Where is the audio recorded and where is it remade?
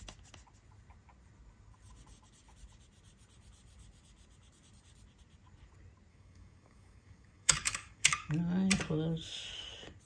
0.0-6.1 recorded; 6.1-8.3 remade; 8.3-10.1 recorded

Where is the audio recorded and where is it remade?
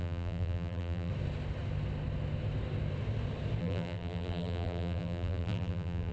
0.0-1.1 remade; 1.1-3.6 recorded; 3.6-6.1 remade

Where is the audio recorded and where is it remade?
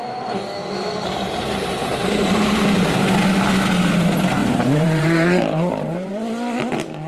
0.0-1.8 recorded; 1.8-3.1 remade; 3.1-4.4 recorded; 4.4-6.1 remade; 6.1-7.1 recorded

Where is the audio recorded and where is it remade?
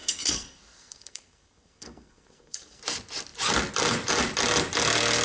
0.0-2.8 remade; 2.8-5.2 recorded